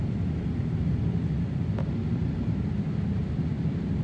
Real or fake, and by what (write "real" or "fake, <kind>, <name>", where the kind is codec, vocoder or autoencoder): real